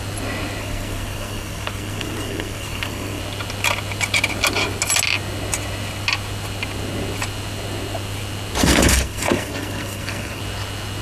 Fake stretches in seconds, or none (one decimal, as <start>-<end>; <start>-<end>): 0.6-3.2; 8.6-10.4

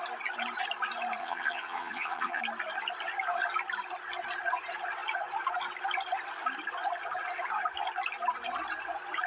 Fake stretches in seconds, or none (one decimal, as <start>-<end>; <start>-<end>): 1.2-2.4

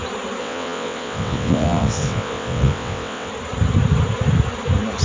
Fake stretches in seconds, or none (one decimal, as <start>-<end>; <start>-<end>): 0.4-3.3

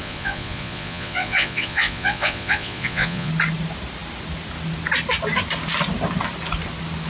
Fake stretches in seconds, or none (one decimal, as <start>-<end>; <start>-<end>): 0.0-3.3

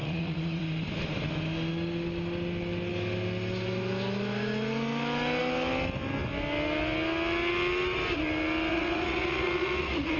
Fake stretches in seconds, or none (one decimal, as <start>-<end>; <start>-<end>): 0.0-0.6; 8.7-10.2

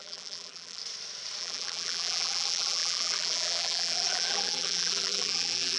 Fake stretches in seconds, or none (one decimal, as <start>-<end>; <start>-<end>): 0.0-0.8; 1.4-5.8

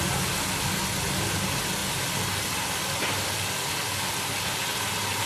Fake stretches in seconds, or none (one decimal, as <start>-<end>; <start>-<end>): none